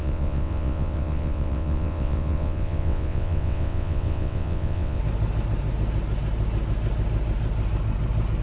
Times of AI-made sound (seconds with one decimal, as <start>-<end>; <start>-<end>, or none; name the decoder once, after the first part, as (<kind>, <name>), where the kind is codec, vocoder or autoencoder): 0.0-5.0 (vocoder, WaveNeXt)